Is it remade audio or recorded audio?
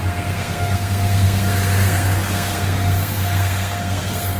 remade